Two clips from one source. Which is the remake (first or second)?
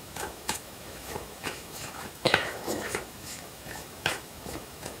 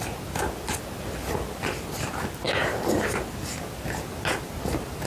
first